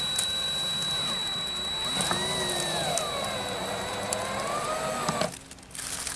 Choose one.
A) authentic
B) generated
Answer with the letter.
A